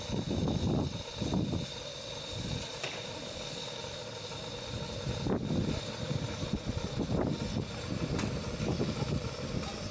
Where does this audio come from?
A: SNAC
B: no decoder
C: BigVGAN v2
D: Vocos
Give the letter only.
B